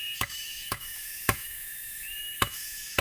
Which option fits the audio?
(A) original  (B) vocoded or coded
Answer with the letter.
B